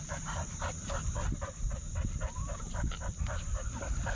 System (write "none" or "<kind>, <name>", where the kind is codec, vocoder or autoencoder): vocoder, BigVGAN v2